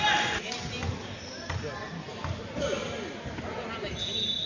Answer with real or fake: real